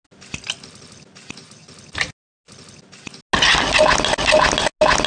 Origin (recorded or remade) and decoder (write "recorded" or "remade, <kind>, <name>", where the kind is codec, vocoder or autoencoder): recorded